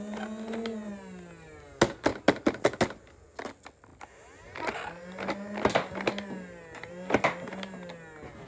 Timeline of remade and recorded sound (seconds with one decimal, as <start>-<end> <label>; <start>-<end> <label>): 0.0-8.5 recorded